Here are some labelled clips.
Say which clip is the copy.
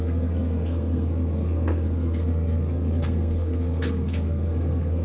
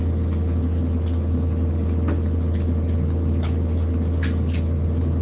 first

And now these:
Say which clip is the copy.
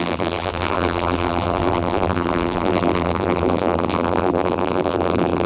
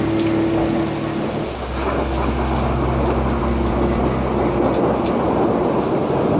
first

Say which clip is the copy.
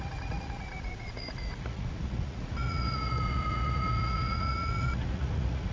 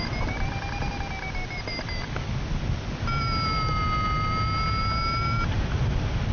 first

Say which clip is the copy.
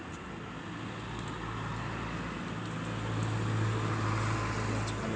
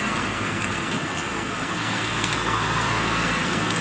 second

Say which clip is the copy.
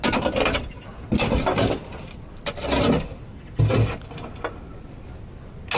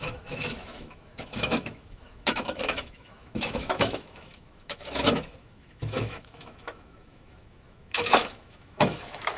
second